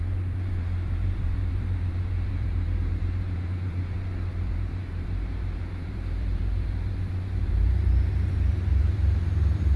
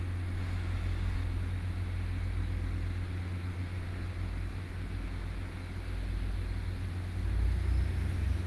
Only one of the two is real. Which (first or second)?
second